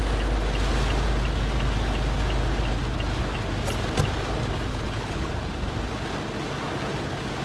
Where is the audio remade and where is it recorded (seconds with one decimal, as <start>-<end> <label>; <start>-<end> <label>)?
0.0-4.7 recorded; 4.7-5.3 remade; 5.3-7.4 recorded